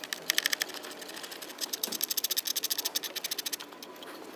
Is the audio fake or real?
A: real